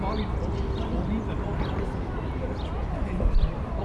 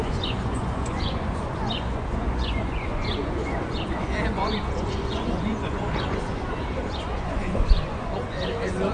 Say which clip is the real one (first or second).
first